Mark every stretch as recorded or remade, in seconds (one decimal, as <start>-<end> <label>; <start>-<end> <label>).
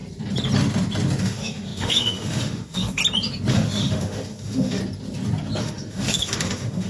0.0-1.2 recorded; 1.2-3.0 remade; 3.0-3.5 recorded; 3.5-4.8 remade; 4.8-5.6 recorded; 5.6-6.9 remade